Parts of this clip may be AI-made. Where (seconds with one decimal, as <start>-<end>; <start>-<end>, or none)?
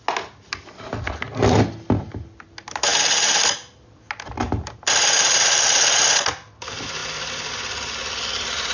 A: none